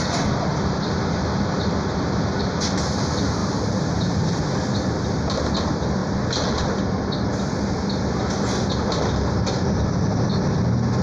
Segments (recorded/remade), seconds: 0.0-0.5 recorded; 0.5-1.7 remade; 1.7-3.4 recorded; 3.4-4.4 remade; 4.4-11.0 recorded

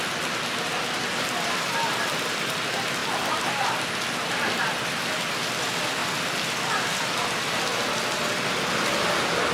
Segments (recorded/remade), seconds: 0.0-9.5 recorded

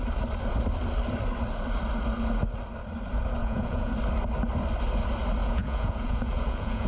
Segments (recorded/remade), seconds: 0.0-3.4 recorded; 3.4-3.9 remade; 3.9-5.4 recorded; 5.4-6.9 remade

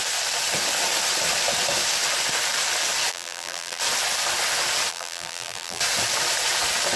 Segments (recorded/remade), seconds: 0.0-3.1 recorded; 3.1-3.8 remade; 3.8-4.9 recorded; 4.9-5.8 remade; 5.8-7.0 recorded

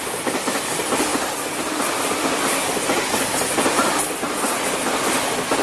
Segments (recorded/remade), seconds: 0.0-1.1 remade; 1.1-4.5 recorded; 4.5-5.6 remade